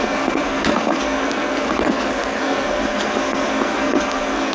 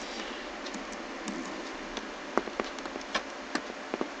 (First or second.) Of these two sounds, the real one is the second